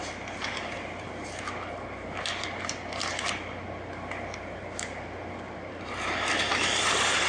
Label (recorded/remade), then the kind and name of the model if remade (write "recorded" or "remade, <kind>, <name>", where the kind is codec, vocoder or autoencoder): recorded